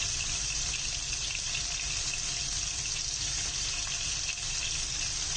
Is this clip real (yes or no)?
yes